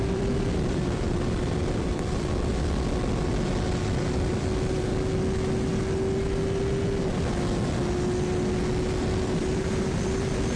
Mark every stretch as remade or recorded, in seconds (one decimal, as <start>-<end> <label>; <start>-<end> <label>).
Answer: 0.0-2.5 remade; 2.5-3.8 recorded; 3.8-4.9 remade; 4.9-9.0 recorded; 9.0-10.6 remade